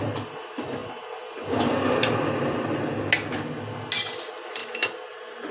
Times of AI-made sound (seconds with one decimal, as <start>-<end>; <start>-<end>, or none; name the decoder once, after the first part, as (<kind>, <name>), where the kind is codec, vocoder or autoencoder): none